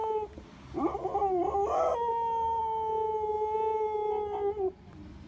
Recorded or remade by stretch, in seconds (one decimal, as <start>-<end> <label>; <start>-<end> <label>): 0.0-5.3 recorded